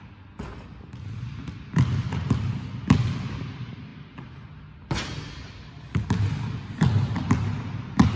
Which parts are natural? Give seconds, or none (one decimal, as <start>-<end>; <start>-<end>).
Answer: 0.0-8.2